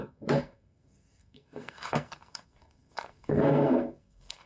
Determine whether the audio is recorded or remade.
remade